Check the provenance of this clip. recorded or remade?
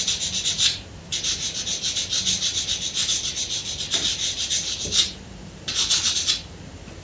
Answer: recorded